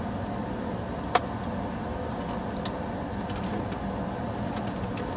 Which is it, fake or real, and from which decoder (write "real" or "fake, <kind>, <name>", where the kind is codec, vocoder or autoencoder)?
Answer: real